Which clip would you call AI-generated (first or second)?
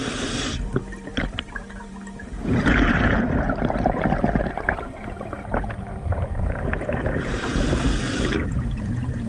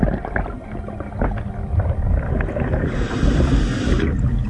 first